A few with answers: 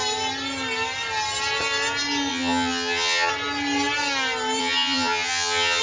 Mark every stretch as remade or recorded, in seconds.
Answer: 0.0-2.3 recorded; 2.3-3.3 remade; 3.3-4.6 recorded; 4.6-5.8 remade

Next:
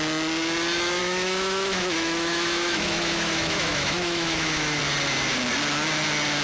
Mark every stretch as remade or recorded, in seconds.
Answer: 0.0-1.0 recorded; 1.0-4.8 remade; 4.8-6.4 recorded

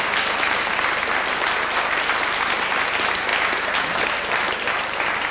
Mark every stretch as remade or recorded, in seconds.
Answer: 0.0-5.3 recorded

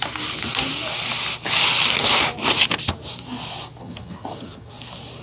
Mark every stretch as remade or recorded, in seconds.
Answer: 0.0-3.8 recorded; 3.8-4.7 remade; 4.7-5.2 recorded

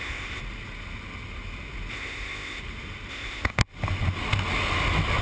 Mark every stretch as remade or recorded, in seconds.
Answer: 0.0-0.4 remade; 0.4-1.9 recorded; 1.9-2.6 remade; 2.6-3.1 recorded; 3.1-3.6 remade; 3.6-5.2 recorded